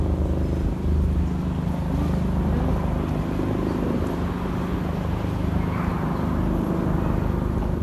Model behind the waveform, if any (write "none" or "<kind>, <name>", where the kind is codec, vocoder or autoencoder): none